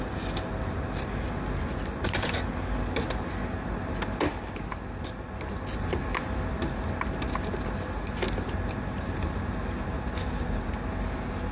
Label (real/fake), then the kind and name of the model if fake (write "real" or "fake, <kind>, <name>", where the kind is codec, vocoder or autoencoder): real